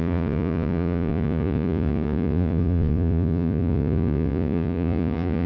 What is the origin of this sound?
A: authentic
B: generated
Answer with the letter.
B